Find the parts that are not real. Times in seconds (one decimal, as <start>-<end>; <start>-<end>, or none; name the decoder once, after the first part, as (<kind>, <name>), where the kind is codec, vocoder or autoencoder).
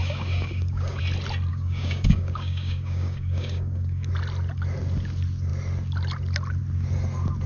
0.0-1.0 (codec, DAC); 1.5-4.1